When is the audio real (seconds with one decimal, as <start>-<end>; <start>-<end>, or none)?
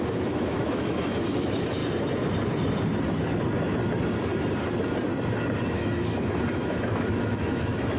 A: 1.8-5.7